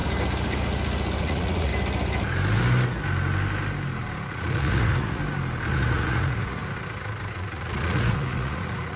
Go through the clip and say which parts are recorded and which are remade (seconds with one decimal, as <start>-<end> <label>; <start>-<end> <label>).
0.0-1.2 recorded; 1.2-1.7 remade; 1.7-4.3 recorded; 4.3-5.2 remade; 5.2-5.7 recorded; 5.7-6.6 remade; 6.6-7.3 recorded; 7.3-9.0 remade